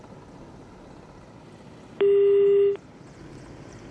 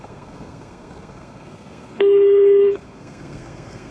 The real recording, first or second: first